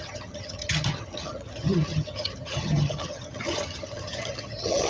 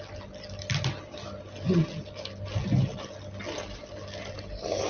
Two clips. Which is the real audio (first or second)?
second